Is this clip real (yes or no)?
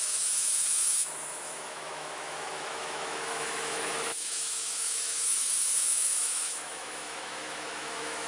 no